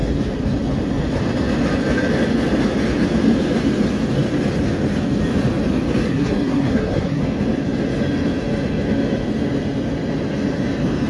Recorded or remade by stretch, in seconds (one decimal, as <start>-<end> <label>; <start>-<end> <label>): 0.0-6.0 recorded; 6.0-7.2 remade; 7.2-11.1 recorded